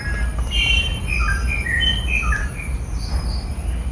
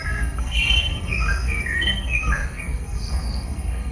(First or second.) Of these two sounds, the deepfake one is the second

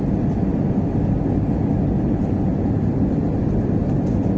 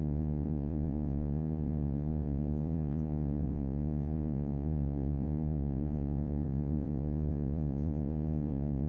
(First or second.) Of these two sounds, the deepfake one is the second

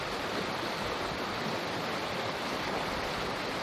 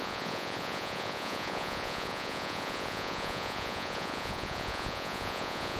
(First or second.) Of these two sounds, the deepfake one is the second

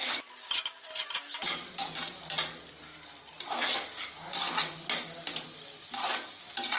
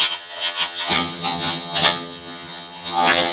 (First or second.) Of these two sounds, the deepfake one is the second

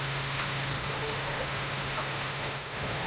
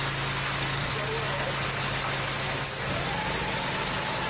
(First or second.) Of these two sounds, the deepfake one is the first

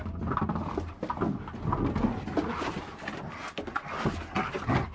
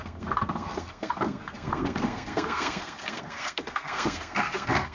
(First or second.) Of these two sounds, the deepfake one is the second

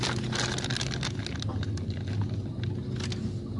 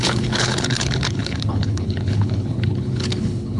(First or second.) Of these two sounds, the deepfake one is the second